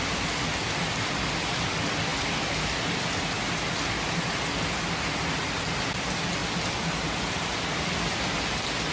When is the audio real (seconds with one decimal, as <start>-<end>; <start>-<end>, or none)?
0.0-8.9